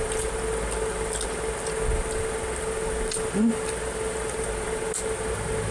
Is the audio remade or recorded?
recorded